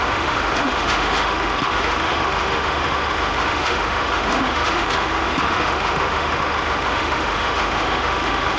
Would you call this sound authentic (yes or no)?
no